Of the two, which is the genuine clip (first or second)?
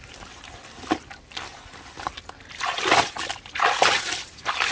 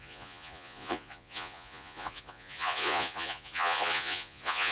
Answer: first